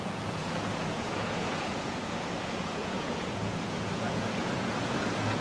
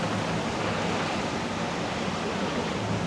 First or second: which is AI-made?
first